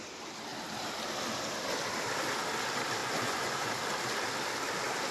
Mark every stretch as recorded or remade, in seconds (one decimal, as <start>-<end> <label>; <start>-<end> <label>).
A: 0.0-3.0 recorded; 3.0-3.7 remade; 3.7-5.1 recorded